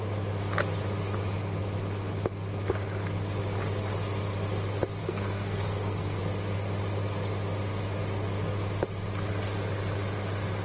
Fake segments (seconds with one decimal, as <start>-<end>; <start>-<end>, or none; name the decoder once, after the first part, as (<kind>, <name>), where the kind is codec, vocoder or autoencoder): 5.0-6.2 (codec, SNAC)